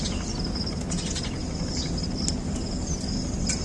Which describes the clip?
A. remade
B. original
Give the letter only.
B